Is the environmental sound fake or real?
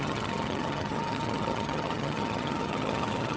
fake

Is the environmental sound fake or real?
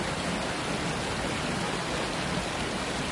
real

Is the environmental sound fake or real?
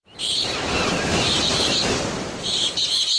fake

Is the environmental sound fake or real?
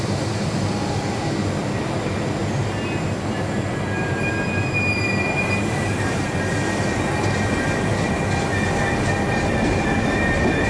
real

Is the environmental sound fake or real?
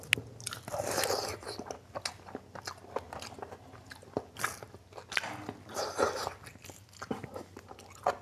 real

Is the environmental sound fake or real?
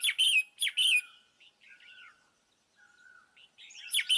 real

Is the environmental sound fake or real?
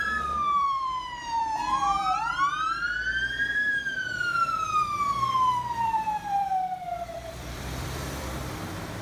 fake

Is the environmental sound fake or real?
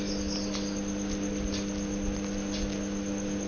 real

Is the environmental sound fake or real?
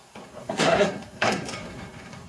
fake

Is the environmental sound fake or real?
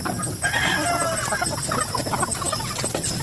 real